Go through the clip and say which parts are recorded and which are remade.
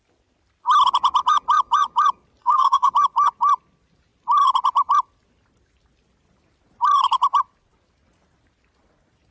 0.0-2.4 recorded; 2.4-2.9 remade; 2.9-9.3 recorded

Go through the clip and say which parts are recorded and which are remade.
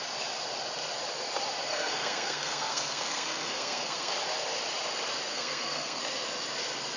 0.0-1.7 recorded; 1.7-4.1 remade; 4.1-5.3 recorded; 5.3-6.0 remade; 6.0-7.0 recorded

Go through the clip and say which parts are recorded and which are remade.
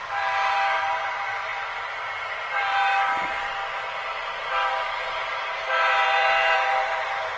0.0-7.4 remade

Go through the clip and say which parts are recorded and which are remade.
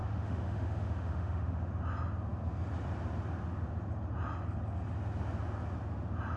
0.0-1.7 remade; 1.7-6.4 recorded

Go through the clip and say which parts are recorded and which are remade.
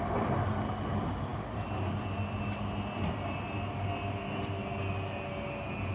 0.0-5.9 recorded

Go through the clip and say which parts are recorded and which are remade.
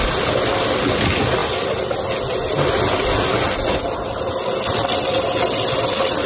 0.0-6.3 recorded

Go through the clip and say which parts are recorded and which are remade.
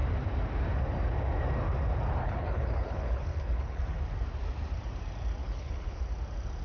0.0-2.2 recorded; 2.2-3.8 remade; 3.8-5.4 recorded; 5.4-6.0 remade; 6.0-6.6 recorded